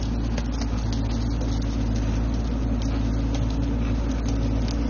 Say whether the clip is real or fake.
real